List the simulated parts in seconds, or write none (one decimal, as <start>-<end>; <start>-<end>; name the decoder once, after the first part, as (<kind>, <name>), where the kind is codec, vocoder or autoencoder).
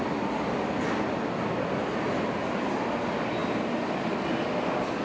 none